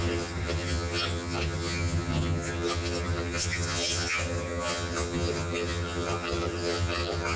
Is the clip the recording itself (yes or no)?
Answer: no